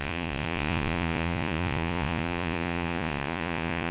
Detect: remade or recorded remade